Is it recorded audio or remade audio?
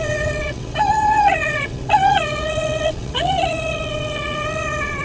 remade